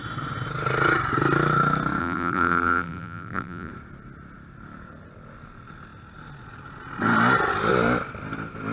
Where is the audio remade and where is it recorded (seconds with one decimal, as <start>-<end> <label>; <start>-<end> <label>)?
0.0-2.0 recorded; 2.0-3.7 remade; 3.7-8.7 recorded